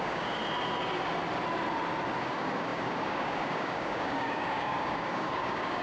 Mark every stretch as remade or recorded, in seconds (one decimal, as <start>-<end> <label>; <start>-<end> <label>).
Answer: 0.0-0.4 remade; 0.4-2.2 recorded; 2.2-5.8 remade